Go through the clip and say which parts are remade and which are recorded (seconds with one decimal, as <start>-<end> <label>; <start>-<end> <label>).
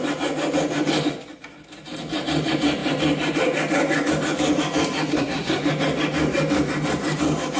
0.0-5.1 recorded; 5.1-5.6 remade; 5.6-7.6 recorded